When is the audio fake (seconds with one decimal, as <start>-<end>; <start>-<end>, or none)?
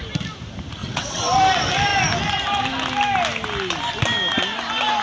0.8-1.4